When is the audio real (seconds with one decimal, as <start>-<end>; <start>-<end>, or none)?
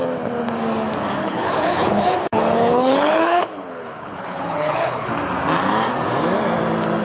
0.0-1.2; 5.1-7.0